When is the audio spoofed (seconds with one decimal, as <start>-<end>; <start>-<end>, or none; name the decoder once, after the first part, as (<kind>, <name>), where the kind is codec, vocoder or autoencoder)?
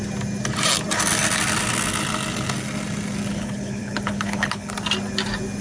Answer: 3.3-4.7 (codec, HILCodec)